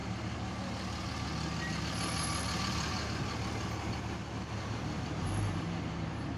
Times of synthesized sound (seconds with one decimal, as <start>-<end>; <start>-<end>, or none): none